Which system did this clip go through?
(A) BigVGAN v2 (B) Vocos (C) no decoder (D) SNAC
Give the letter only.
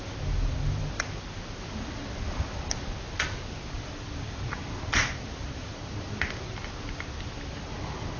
C